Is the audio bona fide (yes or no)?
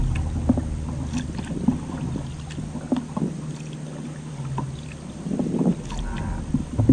yes